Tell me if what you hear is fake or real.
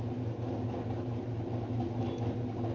real